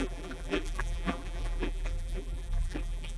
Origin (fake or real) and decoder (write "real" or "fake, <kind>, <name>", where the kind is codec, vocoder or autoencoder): fake, vocoder, BigVGAN v2